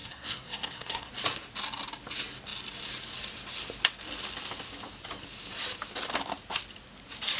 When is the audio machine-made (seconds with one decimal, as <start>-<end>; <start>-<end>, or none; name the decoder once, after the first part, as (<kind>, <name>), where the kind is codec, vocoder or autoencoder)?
0.0-1.1 (codec, SNAC)